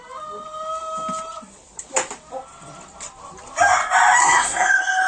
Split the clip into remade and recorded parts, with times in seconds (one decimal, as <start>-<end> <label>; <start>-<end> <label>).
0.0-4.2 recorded; 4.2-5.1 remade